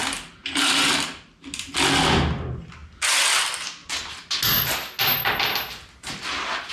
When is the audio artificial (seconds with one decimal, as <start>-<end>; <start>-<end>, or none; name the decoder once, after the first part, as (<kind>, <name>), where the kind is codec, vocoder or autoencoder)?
0.4-0.9 (vocoder, BigVGAN v2)